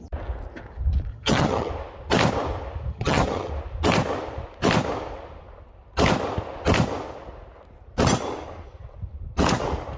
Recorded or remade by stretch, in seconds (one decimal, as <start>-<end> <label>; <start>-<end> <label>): 0.0-1.1 recorded; 1.1-1.7 remade; 1.7-2.9 recorded; 2.9-3.5 remade; 3.5-10.0 recorded